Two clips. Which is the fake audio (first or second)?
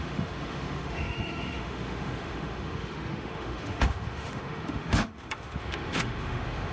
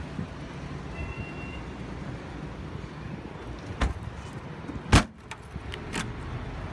first